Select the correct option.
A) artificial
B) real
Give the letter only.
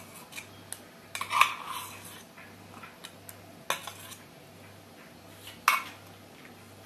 B